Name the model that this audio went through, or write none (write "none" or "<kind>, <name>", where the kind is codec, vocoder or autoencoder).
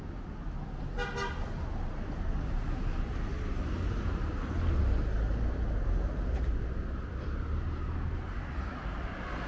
none